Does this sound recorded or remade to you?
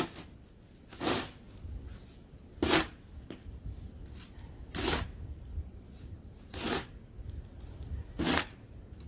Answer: recorded